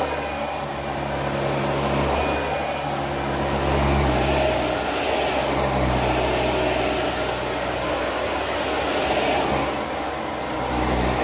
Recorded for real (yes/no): yes